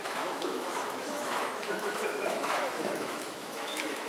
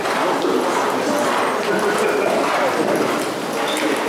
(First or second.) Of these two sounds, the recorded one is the second